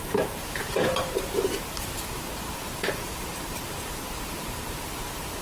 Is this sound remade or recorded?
remade